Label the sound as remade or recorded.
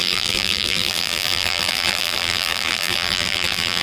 remade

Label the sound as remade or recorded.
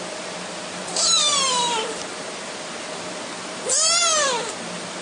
remade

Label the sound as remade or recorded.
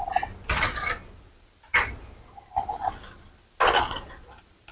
recorded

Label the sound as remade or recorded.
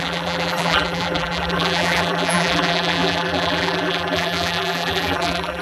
remade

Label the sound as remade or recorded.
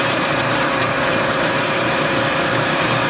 remade